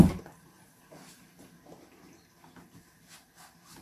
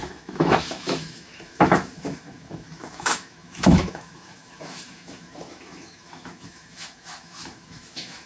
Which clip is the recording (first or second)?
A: first